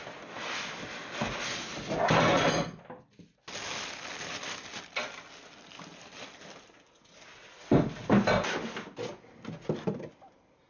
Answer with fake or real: real